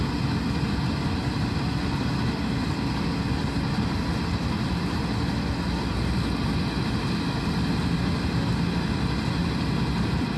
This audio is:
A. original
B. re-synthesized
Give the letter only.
A